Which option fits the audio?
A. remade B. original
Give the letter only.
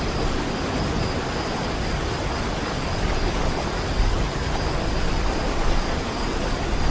B